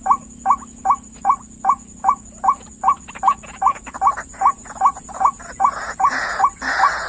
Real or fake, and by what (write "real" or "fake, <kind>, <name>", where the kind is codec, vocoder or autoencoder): fake, vocoder, Vocos